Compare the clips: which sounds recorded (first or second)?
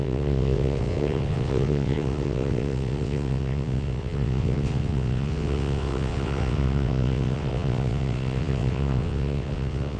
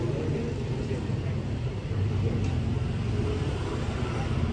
second